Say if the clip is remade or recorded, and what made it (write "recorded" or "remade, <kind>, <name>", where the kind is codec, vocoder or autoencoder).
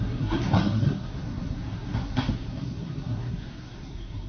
remade, codec, SNAC